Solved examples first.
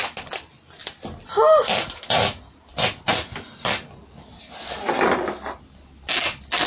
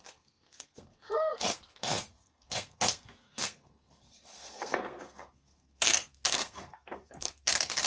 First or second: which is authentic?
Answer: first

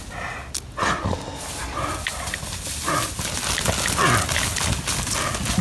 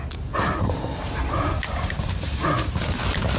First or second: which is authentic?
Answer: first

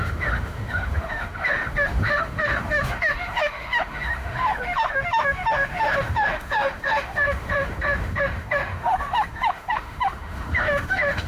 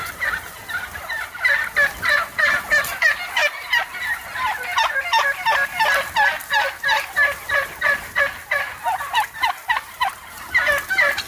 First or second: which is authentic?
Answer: second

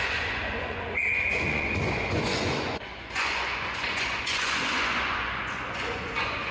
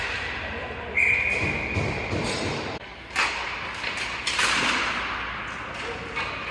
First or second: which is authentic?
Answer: second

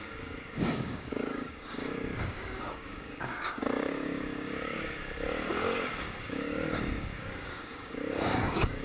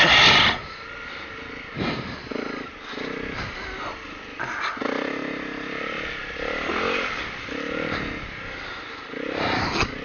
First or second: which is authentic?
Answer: second